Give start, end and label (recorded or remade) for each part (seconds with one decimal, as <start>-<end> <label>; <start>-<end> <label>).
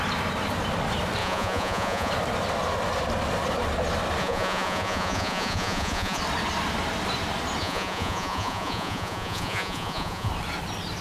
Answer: 0.0-1.2 recorded; 1.2-2.1 remade; 2.1-4.2 recorded; 4.2-6.2 remade; 6.2-7.6 recorded; 7.6-10.3 remade; 10.3-11.0 recorded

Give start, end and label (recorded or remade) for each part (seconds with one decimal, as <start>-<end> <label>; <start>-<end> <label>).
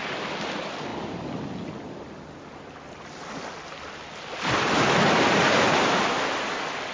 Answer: 0.0-6.9 recorded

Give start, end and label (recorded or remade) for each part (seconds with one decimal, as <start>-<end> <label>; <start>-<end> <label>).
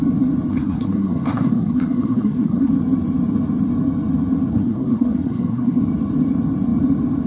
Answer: 0.0-0.5 recorded; 0.5-2.7 remade; 2.7-4.5 recorded; 4.5-5.8 remade; 5.8-7.3 recorded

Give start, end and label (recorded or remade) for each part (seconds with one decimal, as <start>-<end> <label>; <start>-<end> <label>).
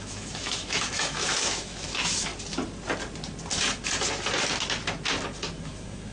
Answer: 0.0-2.3 remade; 2.3-5.6 recorded; 5.6-6.1 remade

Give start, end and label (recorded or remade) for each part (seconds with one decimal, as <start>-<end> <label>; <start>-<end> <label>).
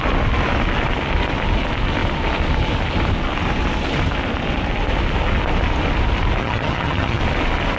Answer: 0.0-6.4 recorded; 6.4-7.2 remade; 7.2-7.8 recorded